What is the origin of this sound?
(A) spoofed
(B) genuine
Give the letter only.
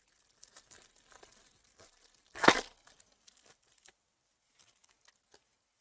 B